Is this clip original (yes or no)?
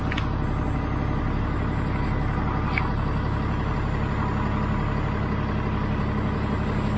yes